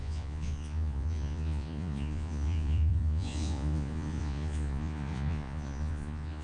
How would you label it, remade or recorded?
remade